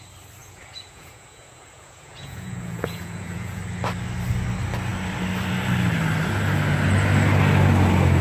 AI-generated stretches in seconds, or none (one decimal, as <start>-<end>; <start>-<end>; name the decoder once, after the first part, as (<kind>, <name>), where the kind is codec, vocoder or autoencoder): 0.4-3.6 (vocoder, Vocos)